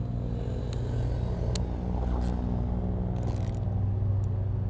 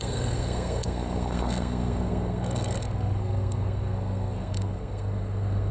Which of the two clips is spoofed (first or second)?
second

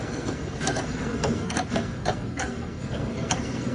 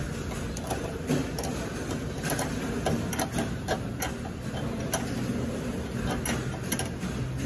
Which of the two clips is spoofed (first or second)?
first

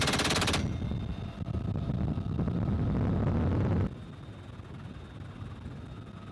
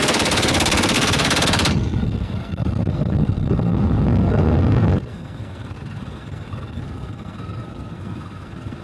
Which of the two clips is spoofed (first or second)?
second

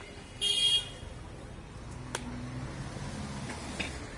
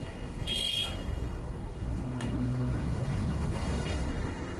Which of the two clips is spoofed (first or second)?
second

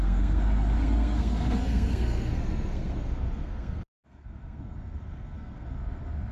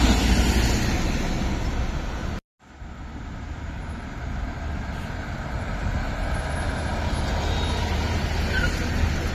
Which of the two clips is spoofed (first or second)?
first